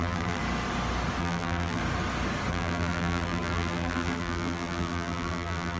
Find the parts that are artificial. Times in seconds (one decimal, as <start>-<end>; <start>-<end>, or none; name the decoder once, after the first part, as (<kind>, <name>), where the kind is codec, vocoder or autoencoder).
0.0-0.4 (vocoder, BigVGAN v2); 1.2-1.8; 2.5-5.8